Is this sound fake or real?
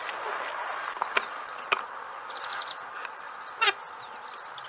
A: real